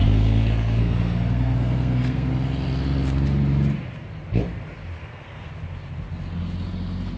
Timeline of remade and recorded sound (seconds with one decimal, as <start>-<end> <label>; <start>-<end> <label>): 0.0-2.3 remade; 2.3-5.0 recorded; 5.0-5.5 remade; 5.5-7.2 recorded